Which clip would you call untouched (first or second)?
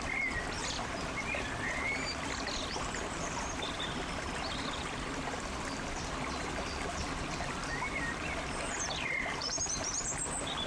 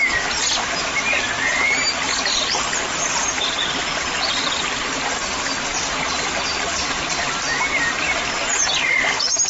second